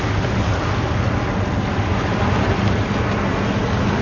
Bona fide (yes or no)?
yes